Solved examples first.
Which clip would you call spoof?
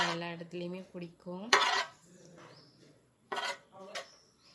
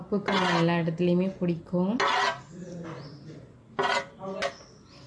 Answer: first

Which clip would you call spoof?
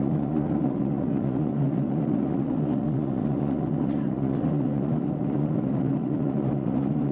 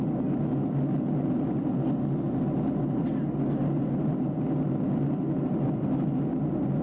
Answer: first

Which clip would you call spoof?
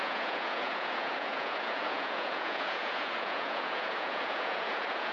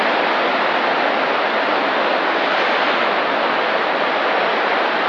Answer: first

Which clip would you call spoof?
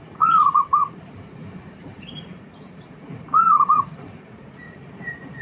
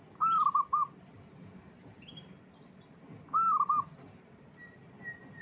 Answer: first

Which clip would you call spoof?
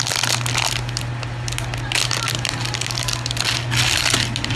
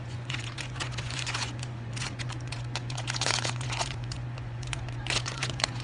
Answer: second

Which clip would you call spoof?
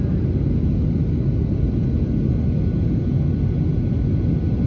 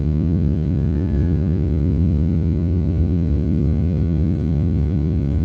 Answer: second